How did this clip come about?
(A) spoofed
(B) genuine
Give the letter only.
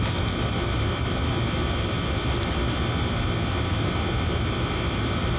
B